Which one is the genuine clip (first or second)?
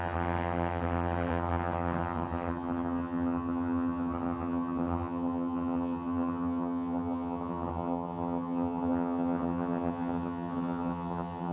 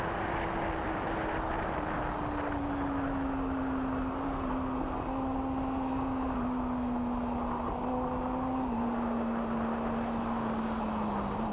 second